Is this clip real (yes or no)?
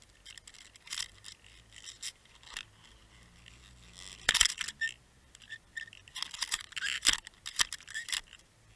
yes